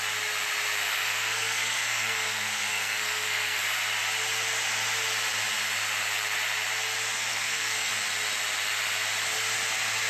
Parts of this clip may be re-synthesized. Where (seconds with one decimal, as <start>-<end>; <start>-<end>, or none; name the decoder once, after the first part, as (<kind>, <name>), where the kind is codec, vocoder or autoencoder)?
0.8-3.6 (codec, SNAC); 7.3-7.9